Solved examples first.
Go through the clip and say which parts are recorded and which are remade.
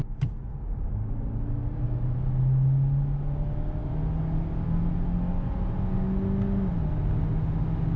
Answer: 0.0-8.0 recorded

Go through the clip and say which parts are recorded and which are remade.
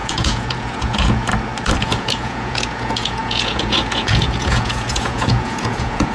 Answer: 0.0-1.3 remade; 1.3-1.8 recorded; 1.8-6.1 remade